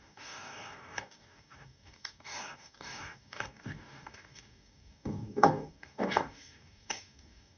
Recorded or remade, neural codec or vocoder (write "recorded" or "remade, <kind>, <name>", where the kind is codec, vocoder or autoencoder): remade, codec, DAC